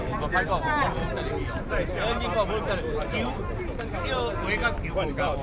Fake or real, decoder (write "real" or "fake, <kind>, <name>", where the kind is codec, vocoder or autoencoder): real